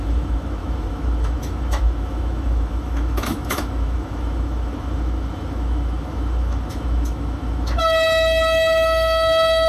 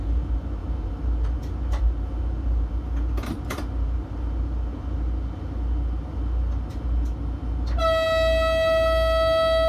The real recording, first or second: second